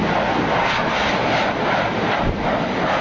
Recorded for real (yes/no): yes